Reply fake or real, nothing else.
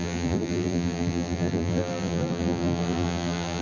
fake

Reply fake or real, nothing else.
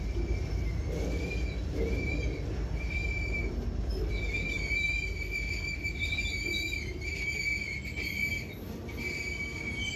real